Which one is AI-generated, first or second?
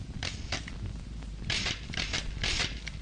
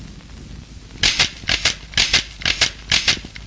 first